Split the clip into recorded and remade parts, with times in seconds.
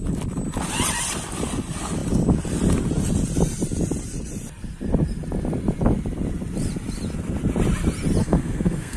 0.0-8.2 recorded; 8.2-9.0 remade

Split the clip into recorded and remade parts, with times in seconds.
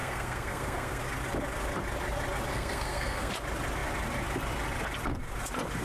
0.0-1.0 remade; 1.0-2.5 recorded; 2.5-3.3 remade; 3.3-5.8 recorded